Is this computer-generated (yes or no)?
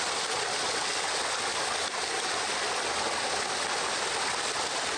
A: no